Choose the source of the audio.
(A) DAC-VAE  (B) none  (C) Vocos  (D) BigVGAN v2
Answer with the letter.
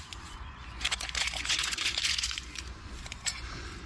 C